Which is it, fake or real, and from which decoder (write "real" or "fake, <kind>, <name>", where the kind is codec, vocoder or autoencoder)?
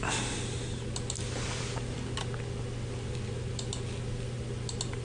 real